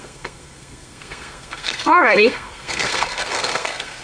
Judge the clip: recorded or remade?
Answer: remade